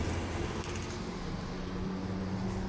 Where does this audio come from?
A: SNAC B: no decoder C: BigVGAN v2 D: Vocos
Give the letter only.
B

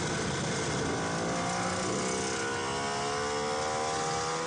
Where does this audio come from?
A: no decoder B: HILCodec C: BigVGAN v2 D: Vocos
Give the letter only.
A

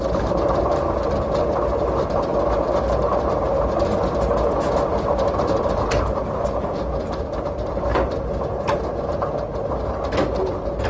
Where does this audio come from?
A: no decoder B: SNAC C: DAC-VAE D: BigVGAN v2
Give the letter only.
A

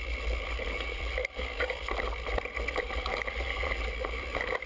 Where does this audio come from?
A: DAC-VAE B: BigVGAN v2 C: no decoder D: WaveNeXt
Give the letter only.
C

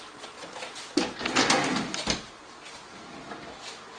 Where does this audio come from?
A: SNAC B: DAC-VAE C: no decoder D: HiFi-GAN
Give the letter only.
C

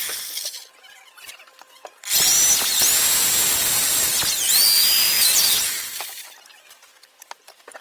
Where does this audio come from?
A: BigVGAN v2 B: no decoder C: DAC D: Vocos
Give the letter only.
B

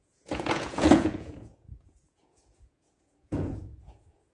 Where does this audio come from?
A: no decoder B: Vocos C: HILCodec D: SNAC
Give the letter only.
B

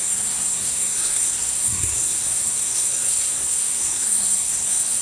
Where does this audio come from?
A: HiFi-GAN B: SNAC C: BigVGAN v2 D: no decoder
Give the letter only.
B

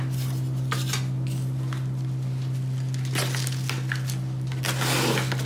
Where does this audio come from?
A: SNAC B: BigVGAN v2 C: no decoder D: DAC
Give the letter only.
C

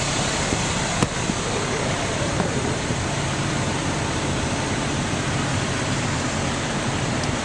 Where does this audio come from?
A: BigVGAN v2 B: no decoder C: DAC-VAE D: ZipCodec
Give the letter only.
A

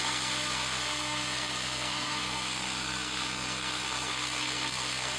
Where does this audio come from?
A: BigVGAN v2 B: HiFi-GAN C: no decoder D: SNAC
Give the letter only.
D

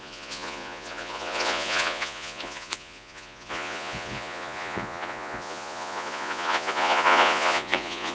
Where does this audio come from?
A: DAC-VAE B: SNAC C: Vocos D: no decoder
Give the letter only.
C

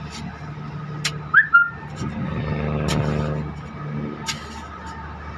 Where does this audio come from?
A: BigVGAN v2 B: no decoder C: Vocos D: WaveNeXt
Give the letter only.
B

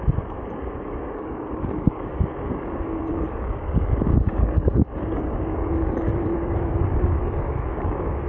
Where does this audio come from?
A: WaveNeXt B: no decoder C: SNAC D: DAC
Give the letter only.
D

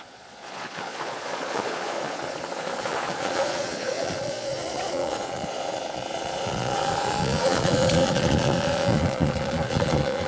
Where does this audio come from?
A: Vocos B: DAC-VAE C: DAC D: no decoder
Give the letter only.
A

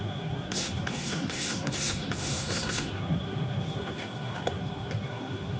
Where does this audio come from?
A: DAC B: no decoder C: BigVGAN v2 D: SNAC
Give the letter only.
D